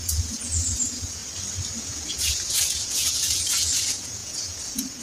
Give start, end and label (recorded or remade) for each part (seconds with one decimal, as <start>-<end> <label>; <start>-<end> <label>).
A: 0.0-1.2 remade; 1.2-1.8 recorded; 1.8-5.0 remade